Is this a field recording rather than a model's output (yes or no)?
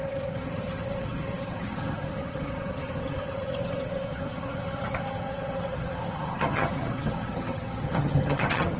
no